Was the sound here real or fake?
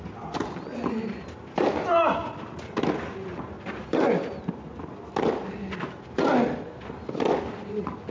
real